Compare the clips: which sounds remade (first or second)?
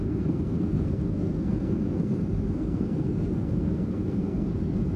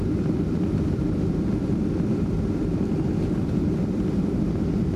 first